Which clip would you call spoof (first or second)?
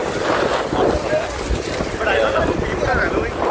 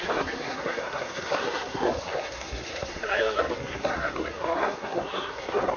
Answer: second